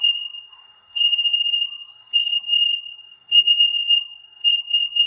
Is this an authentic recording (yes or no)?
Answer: no